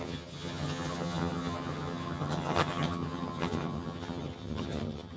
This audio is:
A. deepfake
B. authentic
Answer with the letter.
A